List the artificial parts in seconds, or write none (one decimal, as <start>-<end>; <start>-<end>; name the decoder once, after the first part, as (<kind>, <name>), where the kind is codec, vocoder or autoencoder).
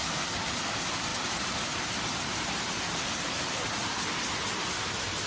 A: 1.1-3.4 (vocoder, BigVGAN v2)